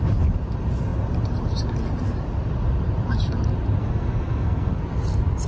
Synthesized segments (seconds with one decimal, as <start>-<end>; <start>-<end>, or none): 3.8-4.8